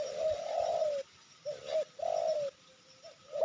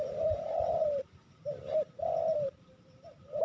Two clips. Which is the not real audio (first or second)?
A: second